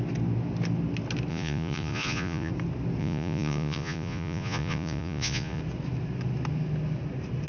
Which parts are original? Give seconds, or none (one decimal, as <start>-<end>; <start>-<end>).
0.0-1.3; 2.5-3.0; 5.6-7.5